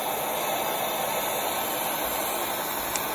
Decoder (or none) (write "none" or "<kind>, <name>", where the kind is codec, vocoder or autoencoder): none